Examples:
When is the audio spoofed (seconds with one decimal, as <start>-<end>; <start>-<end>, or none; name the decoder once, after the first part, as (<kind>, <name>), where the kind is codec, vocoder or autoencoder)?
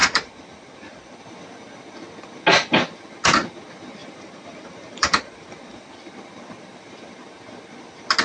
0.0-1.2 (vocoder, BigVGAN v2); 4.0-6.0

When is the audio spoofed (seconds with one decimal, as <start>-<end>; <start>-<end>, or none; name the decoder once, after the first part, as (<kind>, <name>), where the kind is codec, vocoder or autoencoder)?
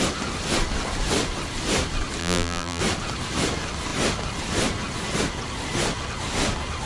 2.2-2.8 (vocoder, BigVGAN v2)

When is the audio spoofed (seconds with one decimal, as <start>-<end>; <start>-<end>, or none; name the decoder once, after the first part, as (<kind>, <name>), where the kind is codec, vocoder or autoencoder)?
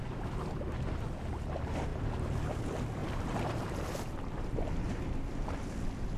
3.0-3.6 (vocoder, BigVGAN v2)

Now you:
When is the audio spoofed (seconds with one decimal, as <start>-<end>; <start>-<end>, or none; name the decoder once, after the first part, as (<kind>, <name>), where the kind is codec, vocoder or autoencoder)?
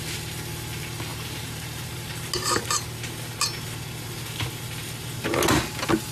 1.1-2.3 (vocoder, BigVGAN v2)